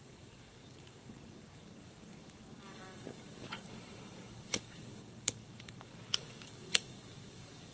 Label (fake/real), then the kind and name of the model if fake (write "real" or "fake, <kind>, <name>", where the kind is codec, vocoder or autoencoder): fake, codec, DAC